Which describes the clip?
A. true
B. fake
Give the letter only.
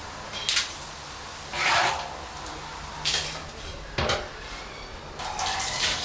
A